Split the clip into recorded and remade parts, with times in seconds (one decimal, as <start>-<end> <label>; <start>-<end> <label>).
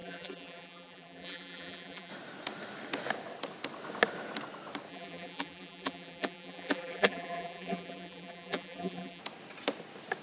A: 0.0-2.1 remade; 2.1-4.9 recorded; 4.9-9.2 remade; 9.2-10.2 recorded